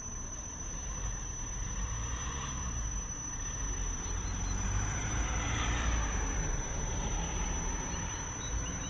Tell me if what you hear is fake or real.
fake